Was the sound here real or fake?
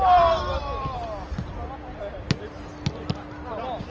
real